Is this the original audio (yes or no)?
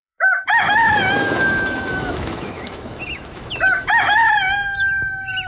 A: no